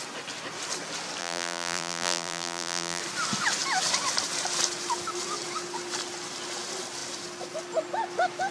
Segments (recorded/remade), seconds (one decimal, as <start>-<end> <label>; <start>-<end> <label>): 0.0-1.2 recorded; 1.2-3.0 remade; 3.0-8.5 recorded